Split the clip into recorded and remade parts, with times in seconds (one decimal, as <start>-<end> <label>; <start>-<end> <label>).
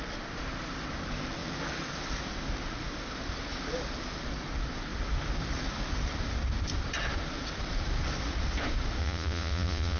0.0-9.0 recorded; 9.0-10.0 remade